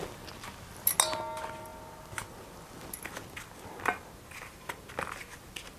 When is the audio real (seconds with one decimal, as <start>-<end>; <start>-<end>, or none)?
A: 0.0-5.8